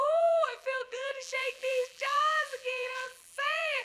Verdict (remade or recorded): remade